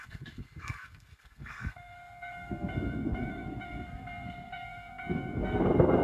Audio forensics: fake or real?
fake